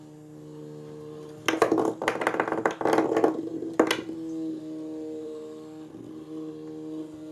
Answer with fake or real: real